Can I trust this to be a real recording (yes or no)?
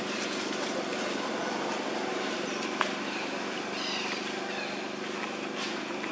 yes